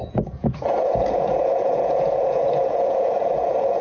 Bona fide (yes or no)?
no